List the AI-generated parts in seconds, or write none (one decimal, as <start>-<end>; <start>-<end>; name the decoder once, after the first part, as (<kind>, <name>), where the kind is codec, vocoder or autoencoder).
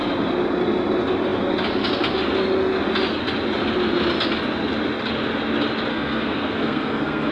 5.9-7.3 (codec, SNAC)